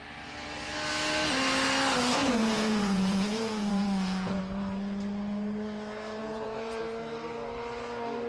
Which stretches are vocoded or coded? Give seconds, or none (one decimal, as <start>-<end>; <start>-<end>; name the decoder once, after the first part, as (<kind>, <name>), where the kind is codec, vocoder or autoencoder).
2.2-4.4 (vocoder, Vocos); 6.2-6.8